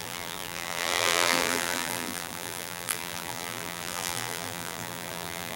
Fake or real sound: fake